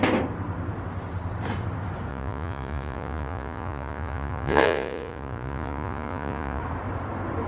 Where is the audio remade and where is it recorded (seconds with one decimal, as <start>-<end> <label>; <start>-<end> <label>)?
0.0-2.1 recorded; 2.1-6.6 remade; 6.6-7.5 recorded

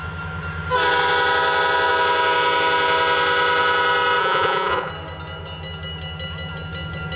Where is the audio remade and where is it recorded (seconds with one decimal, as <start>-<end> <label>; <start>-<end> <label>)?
0.0-4.2 recorded; 4.2-4.9 remade; 4.9-7.2 recorded

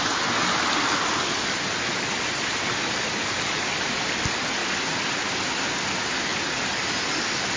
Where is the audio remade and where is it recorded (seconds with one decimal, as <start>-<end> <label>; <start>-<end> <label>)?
0.0-7.6 recorded

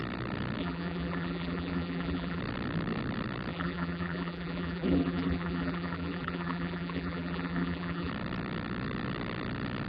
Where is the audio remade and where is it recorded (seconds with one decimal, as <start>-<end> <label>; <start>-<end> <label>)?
0.0-0.6 recorded; 0.6-2.4 remade; 2.4-3.5 recorded; 3.5-8.1 remade; 8.1-9.9 recorded

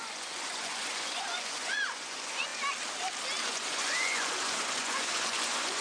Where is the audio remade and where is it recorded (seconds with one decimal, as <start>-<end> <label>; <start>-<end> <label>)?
0.0-2.5 remade; 2.5-3.4 recorded; 3.4-5.8 remade

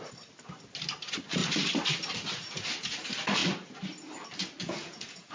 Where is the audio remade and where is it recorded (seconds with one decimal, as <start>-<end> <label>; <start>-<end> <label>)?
0.0-4.6 recorded; 4.6-5.3 remade